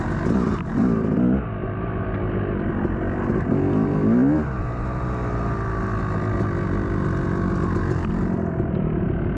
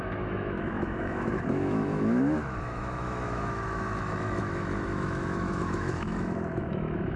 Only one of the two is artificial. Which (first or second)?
second